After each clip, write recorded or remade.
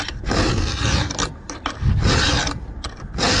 recorded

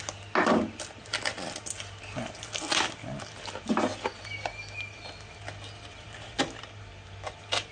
recorded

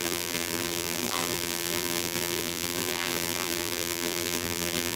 remade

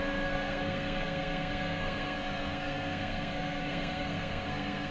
remade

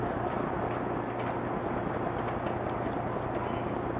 recorded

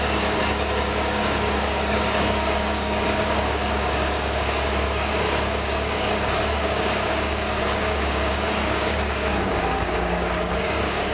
remade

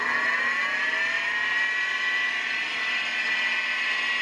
recorded